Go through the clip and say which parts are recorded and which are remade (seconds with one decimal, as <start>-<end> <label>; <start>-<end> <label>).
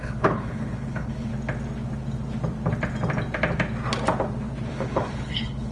0.0-1.3 remade; 1.3-4.7 recorded; 4.7-5.7 remade